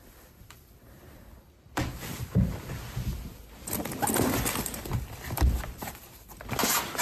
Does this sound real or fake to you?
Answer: fake